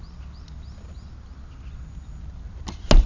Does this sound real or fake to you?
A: real